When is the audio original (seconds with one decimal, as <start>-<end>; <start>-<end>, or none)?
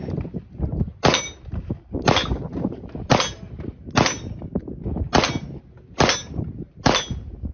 0.0-7.5